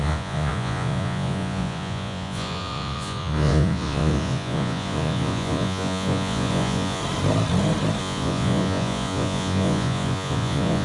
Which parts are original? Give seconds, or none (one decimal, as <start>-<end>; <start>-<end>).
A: 7.0-8.0